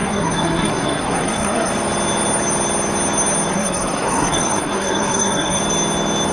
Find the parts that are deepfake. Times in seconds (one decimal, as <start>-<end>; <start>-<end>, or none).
0.0-1.7; 3.5-5.6